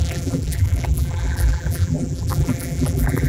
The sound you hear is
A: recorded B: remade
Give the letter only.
B